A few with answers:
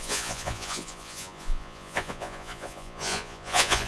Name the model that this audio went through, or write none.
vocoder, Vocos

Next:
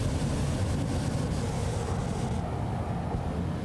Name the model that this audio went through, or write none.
none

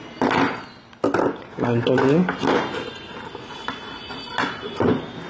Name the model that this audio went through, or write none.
none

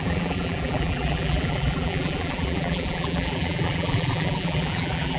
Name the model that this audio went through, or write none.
vocoder, BigVGAN v2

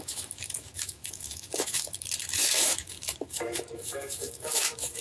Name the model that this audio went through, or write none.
autoencoder, DAC-VAE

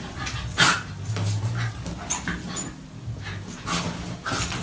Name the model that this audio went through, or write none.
none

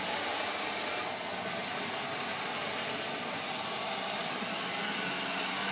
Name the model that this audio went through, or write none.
none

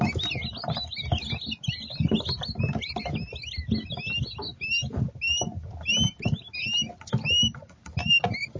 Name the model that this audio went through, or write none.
none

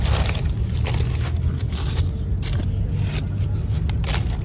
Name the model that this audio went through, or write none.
none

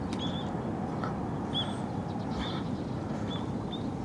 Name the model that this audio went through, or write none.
none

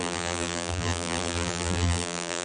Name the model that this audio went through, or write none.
vocoder, BigVGAN v2